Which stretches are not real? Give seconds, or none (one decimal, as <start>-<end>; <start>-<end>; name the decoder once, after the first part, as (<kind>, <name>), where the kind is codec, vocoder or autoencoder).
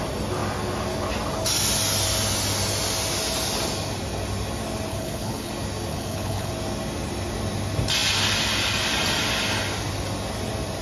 4.9-5.5 (codec, HILCodec); 5.9-6.5